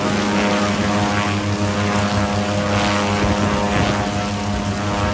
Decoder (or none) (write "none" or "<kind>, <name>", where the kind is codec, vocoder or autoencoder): none